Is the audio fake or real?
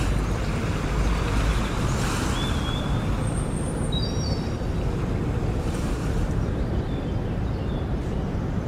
real